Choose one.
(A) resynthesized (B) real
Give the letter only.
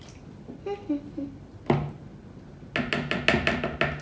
B